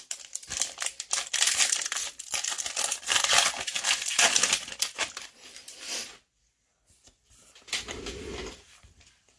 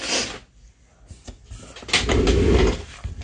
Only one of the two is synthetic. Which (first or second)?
first